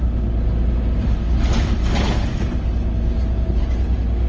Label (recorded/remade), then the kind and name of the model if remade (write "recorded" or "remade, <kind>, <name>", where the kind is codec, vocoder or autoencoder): recorded